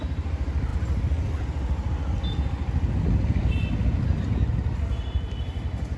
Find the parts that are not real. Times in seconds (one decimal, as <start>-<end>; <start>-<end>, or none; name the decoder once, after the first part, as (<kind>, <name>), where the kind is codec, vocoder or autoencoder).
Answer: none